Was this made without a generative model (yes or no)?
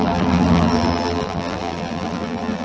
no